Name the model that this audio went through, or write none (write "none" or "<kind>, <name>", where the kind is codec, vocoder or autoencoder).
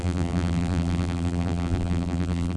vocoder, BigVGAN v2